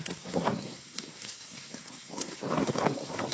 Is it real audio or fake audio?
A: fake